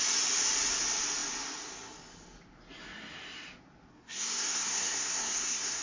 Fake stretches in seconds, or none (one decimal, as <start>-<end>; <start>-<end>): 3.9-5.8